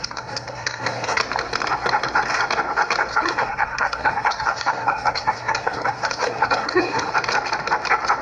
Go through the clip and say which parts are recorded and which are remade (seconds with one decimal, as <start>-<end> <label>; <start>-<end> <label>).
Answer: 0.0-1.2 remade; 1.2-3.1 recorded; 3.1-7.1 remade; 7.1-8.2 recorded